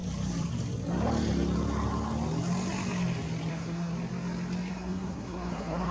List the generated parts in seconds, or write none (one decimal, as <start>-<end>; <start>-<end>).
3.5-3.9; 4.7-5.9